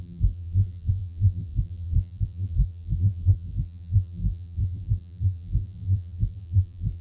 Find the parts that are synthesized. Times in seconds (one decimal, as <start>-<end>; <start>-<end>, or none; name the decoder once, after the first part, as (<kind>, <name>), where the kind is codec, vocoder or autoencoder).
0.0-7.0 (vocoder, BigVGAN v2)